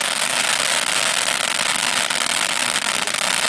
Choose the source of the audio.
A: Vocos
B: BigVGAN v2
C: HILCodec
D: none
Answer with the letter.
D